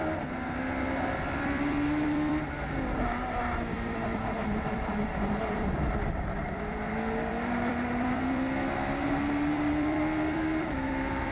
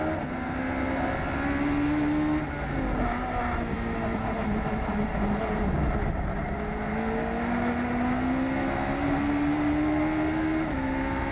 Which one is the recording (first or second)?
second